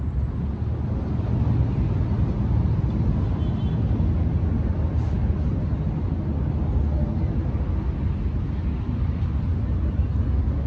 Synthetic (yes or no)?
no